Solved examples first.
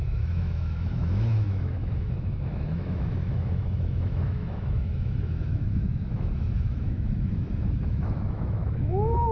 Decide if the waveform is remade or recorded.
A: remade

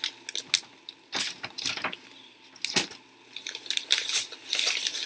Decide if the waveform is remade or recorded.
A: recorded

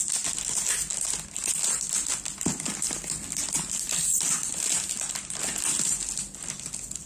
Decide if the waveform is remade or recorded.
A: recorded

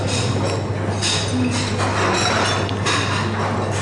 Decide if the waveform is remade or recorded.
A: recorded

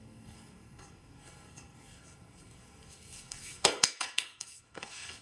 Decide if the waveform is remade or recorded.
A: remade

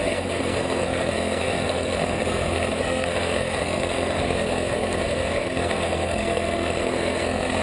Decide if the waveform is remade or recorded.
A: remade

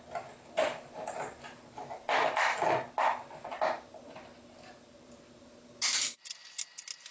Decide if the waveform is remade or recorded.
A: recorded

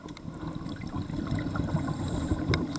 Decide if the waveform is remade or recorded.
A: recorded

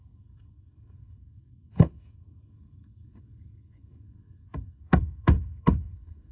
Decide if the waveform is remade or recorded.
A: remade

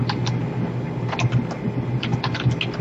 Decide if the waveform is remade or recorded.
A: recorded